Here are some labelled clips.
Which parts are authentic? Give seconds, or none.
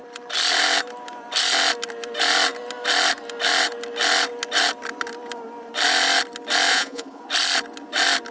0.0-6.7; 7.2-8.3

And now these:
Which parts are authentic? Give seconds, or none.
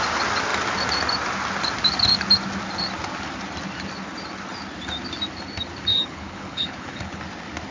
0.0-5.9; 7.2-7.7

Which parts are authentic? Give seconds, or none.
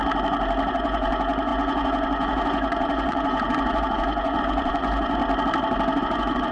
0.0-0.7; 5.2-6.0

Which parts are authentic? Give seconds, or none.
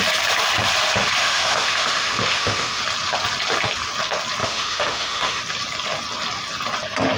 0.0-1.2; 2.8-4.4; 5.4-7.2